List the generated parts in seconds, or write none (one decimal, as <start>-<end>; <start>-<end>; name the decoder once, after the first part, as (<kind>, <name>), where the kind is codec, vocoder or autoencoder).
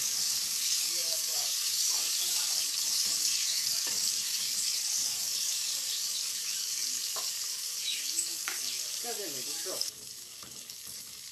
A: 0.0-11.3 (codec, DAC)